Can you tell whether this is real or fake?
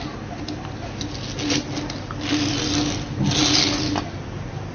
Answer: real